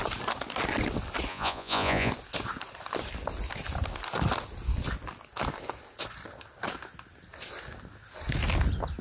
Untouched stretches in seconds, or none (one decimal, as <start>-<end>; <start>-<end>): 0.0-1.3; 2.1-9.0